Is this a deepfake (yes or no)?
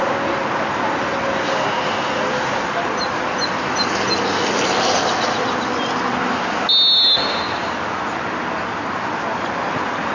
no